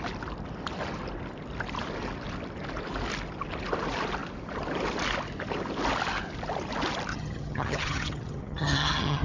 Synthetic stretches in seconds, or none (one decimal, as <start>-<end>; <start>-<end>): 7.1-9.2

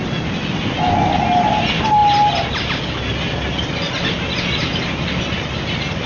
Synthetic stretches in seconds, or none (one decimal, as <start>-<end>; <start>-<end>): none